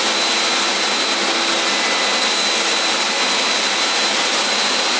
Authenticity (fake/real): real